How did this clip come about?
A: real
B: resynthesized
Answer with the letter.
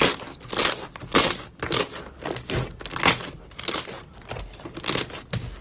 A